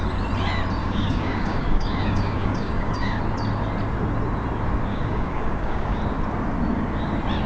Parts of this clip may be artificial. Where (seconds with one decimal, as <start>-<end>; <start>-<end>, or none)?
0.8-3.2; 4.9-6.0